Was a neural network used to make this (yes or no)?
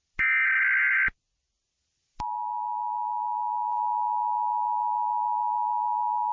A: no